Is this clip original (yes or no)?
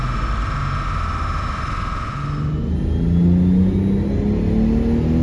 yes